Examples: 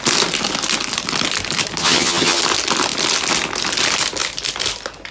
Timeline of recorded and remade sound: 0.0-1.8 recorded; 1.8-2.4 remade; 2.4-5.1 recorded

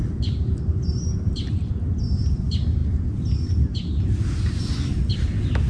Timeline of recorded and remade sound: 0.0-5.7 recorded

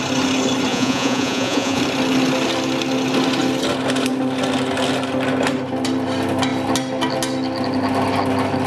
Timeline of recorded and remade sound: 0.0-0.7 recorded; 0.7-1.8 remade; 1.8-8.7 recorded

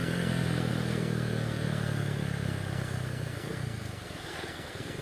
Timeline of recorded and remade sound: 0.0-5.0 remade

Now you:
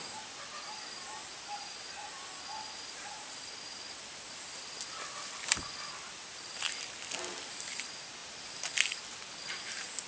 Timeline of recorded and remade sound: 0.0-10.1 recorded

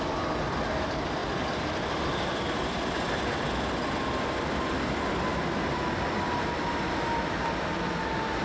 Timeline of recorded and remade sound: 0.0-1.2 recorded; 1.2-6.2 remade; 6.2-8.4 recorded

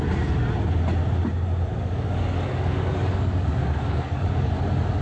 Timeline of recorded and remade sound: 0.0-1.7 recorded; 1.7-4.5 remade; 4.5-5.0 recorded

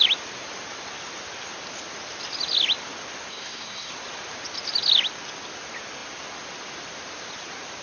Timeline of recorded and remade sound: 0.0-3.3 recorded; 3.3-3.9 remade; 3.9-7.8 recorded